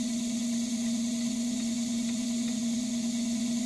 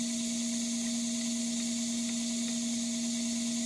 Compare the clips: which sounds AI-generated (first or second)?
first